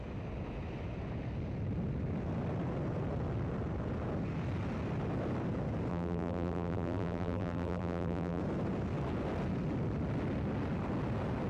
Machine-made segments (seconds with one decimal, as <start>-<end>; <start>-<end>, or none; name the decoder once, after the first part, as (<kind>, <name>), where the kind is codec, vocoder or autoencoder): 5.9-8.4 (vocoder, BigVGAN v2)